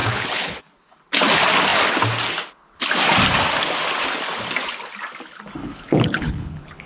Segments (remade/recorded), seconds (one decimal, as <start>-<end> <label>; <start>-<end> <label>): 0.0-0.6 remade; 0.6-5.6 recorded; 5.6-6.9 remade